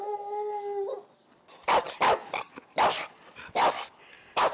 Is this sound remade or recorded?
recorded